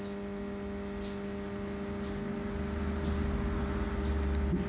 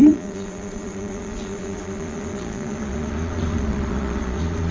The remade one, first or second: second